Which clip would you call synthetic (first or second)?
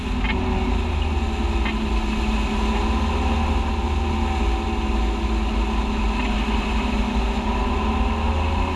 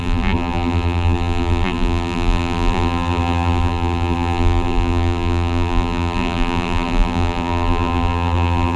second